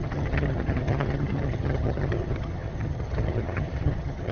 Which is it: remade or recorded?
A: remade